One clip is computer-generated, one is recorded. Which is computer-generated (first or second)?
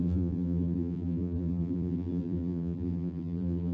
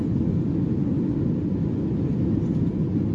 first